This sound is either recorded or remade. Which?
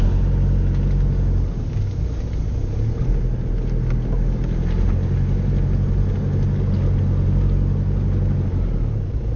recorded